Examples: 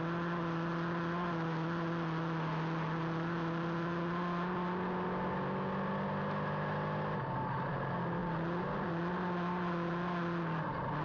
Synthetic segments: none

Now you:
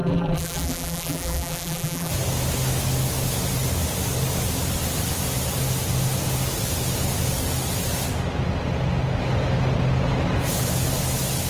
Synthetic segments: 0.0-2.1 (vocoder, BigVGAN v2)

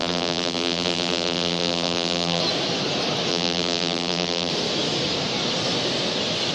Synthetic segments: 0.0-2.4 (vocoder, BigVGAN v2); 3.3-4.5

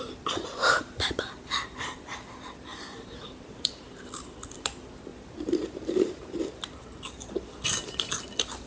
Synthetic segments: 0.5-1.5 (vocoder, BigVGAN v2); 2.7-4.1; 5.1-6.4

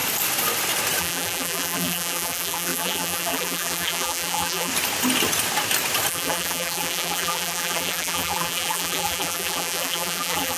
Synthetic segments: 1.0-4.7 (vocoder, BigVGAN v2); 6.1-10.6

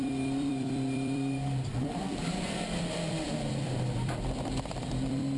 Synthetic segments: 0.0-5.4 (vocoder, BigVGAN v2)

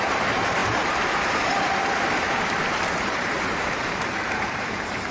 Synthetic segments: 0.0-5.1 (vocoder, BigVGAN v2)

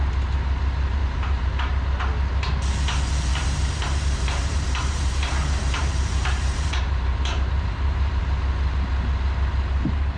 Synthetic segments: 1.0-1.5 (vocoder, BigVGAN v2); 3.3-8.2